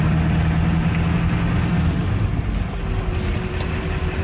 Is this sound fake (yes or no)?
no